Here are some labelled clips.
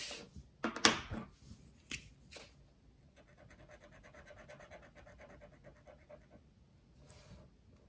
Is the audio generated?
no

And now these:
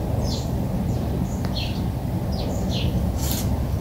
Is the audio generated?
no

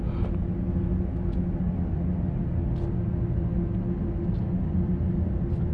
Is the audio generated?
no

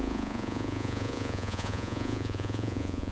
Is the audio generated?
yes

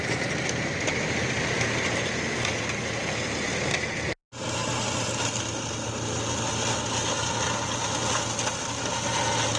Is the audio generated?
no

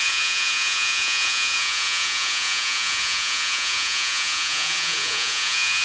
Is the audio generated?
yes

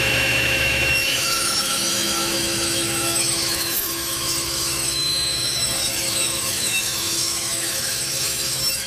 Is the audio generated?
yes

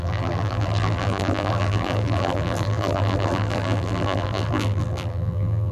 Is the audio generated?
yes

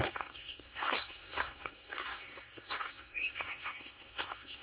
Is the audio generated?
yes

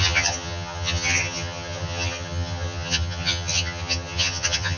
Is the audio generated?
yes